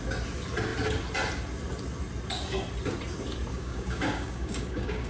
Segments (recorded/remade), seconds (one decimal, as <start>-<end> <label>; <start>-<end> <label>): 0.0-3.5 recorded; 3.5-5.1 remade